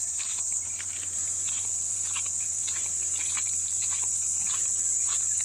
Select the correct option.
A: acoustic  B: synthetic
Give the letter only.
B